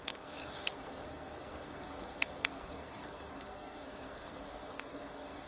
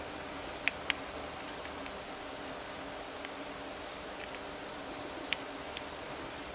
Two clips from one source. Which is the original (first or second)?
second